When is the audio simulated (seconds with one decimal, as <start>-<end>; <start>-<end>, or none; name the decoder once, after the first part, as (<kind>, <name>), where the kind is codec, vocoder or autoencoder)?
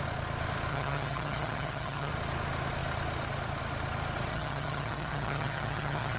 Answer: 0.7-2.1 (vocoder, HiFi-GAN); 4.3-6.2